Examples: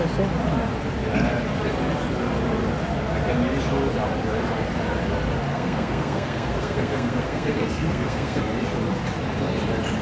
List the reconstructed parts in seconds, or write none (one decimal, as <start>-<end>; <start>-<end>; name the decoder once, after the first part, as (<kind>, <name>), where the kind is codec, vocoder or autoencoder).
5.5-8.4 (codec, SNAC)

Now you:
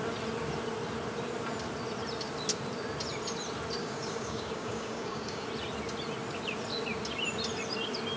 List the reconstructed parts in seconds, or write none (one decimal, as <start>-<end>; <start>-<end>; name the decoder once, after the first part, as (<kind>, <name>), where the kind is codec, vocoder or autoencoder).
3.8-5.5 (codec, DAC)

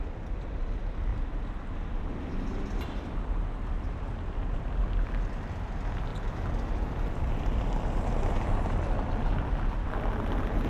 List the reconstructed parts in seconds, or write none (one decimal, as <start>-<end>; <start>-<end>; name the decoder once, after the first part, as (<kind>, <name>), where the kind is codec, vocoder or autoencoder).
1.1-4.8 (vocoder, BigVGAN v2)